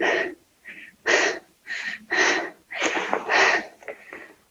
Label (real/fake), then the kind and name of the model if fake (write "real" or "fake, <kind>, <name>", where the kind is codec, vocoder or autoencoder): fake, vocoder, BigVGAN v2